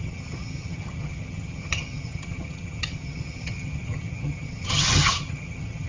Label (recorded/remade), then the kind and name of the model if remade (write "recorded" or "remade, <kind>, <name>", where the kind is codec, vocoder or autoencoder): remade, vocoder, HiFi-GAN